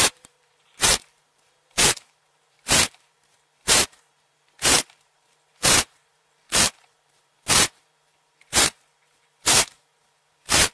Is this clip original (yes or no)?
no